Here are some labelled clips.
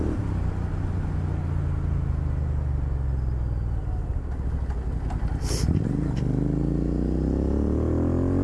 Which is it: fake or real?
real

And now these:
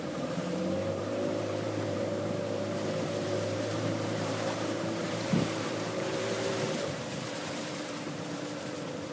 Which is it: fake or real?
fake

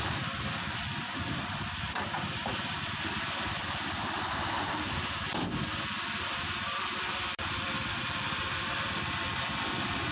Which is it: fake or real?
fake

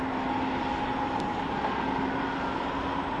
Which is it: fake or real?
real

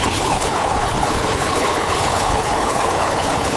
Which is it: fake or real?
fake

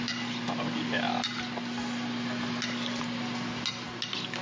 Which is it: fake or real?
real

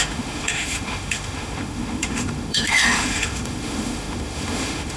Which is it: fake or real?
fake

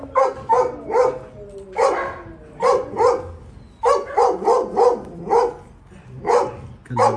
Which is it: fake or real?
real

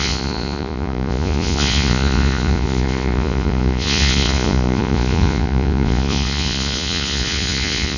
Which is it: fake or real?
fake